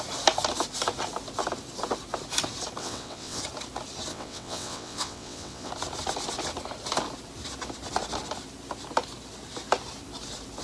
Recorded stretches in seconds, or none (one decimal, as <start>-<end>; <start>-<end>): 0.0-2.8; 3.4-4.1; 5.7-10.6